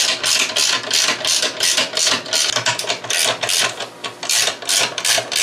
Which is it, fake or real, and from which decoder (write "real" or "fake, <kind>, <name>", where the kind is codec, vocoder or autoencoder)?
real